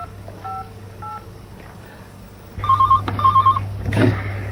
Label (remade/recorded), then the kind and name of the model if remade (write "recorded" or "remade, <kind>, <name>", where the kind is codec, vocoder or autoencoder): remade, codec, DAC